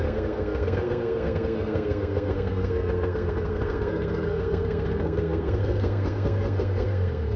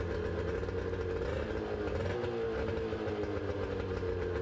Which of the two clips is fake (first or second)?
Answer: first